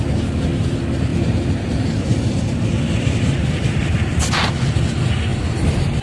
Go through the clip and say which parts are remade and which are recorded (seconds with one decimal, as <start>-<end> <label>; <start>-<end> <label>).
0.0-1.1 recorded; 1.1-4.7 remade; 4.7-5.3 recorded; 5.3-6.0 remade